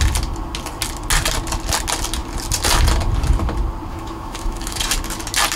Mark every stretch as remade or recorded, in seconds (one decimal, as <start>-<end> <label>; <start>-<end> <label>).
0.0-3.9 recorded; 3.9-4.8 remade; 4.8-5.6 recorded